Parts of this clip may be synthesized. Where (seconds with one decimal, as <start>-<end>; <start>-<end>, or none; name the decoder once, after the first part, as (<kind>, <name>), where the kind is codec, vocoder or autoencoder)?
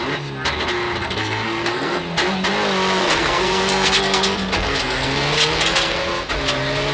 1.0-2.0 (codec, SNAC); 3.0-6.3